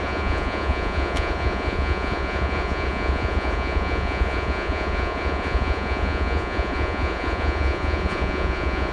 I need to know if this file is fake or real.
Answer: fake